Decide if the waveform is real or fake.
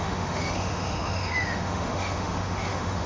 fake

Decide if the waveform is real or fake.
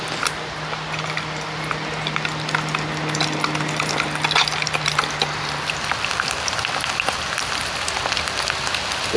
real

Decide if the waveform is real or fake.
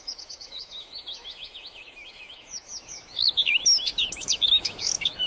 fake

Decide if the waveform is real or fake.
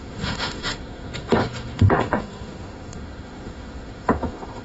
fake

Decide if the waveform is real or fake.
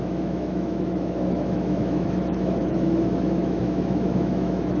fake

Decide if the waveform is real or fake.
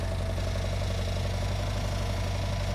real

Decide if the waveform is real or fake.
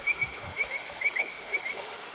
fake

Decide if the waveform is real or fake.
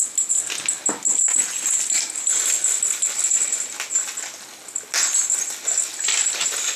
real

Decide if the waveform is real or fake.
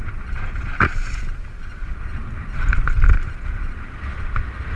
real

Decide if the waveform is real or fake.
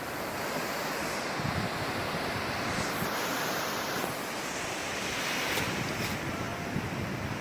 real